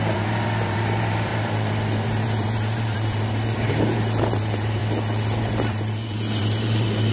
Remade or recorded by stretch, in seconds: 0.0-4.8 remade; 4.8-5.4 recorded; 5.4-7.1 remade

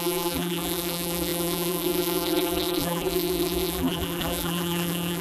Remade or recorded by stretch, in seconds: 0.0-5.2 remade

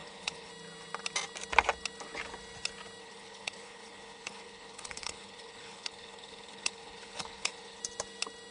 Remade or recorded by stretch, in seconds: 0.0-0.5 remade; 0.5-3.0 recorded; 3.0-7.8 remade; 7.8-8.5 recorded

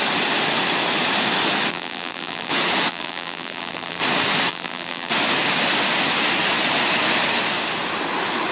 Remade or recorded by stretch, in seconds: 0.0-1.7 recorded; 1.7-2.5 remade; 2.5-2.9 recorded; 2.9-4.0 remade; 4.0-4.5 recorded; 4.5-5.1 remade; 5.1-8.5 recorded

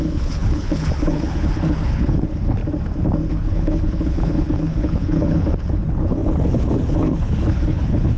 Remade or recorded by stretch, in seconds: 0.0-2.6 remade; 2.6-3.3 recorded; 3.3-8.2 remade